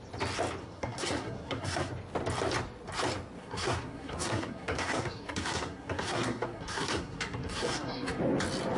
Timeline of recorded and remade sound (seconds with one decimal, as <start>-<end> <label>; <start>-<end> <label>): 0.0-0.6 recorded; 0.6-1.9 remade; 1.9-3.4 recorded; 3.4-8.2 remade; 8.2-8.8 recorded

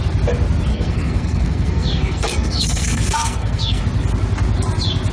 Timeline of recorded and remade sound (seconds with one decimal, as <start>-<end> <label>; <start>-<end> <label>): 0.0-0.7 recorded; 0.7-3.8 remade; 3.8-5.1 recorded

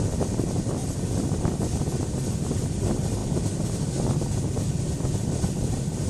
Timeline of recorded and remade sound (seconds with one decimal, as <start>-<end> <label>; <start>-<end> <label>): 0.0-6.1 recorded

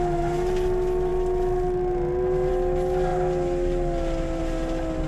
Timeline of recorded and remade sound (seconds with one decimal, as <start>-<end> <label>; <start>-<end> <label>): 0.0-5.1 recorded

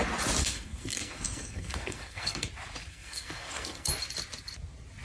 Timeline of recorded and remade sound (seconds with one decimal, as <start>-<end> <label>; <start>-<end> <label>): 0.0-0.4 recorded; 0.4-2.5 remade; 2.5-2.9 recorded; 2.9-3.9 remade; 3.9-5.0 recorded

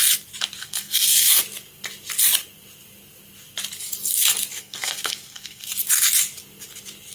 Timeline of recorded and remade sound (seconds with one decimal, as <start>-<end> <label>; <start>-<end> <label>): 0.0-0.6 recorded; 0.6-1.4 remade; 1.4-4.6 recorded; 4.6-5.7 remade; 5.7-7.1 recorded

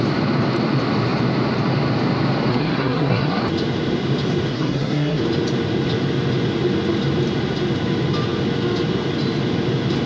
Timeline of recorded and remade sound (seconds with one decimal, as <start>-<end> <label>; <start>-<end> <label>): 0.0-2.5 recorded; 2.5-3.4 remade; 3.4-4.5 recorded; 4.5-5.2 remade; 5.2-10.1 recorded